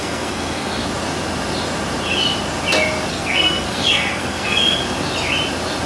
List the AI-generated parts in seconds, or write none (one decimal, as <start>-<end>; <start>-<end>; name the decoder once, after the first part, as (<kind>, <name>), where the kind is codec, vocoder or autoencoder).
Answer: 0.0-0.8 (codec, SNAC); 3.1-4.8